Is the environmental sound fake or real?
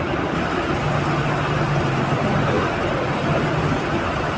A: real